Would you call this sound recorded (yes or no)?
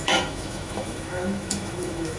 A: no